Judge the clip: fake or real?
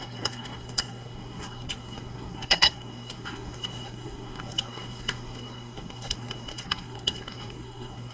fake